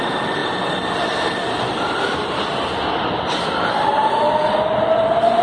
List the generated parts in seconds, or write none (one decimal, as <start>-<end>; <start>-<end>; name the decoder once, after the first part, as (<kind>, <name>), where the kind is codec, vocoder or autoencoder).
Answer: 0.4-2.3 (vocoder, BigVGAN v2)

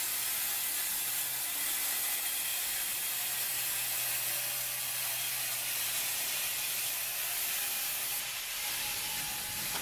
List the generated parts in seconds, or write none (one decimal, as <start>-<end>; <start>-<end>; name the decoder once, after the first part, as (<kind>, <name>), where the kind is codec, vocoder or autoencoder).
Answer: none

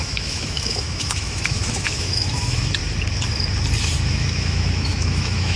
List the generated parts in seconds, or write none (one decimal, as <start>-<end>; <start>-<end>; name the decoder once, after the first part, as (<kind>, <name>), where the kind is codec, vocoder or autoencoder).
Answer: 0.0-2.8 (autoencoder, DAC-VAE); 4.1-5.6

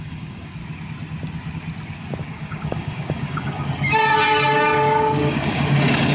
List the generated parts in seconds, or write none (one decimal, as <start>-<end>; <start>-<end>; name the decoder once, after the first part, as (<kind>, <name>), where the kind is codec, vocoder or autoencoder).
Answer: 0.0-0.6 (codec, DAC); 2.2-6.1